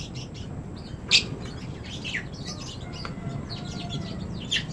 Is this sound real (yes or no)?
yes